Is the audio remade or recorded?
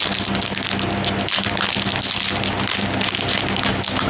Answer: recorded